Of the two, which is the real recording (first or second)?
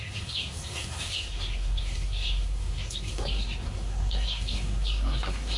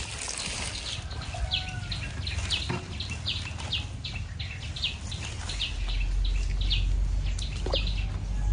second